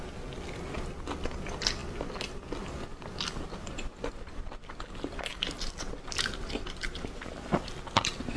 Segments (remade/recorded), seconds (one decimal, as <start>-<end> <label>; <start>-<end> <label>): 0.0-8.4 recorded